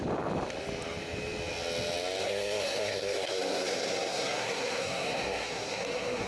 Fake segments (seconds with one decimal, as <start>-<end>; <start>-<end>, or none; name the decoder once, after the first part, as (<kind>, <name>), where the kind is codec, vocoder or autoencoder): 2.2-6.3 (codec, SNAC)